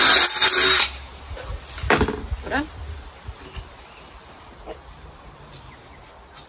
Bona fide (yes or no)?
yes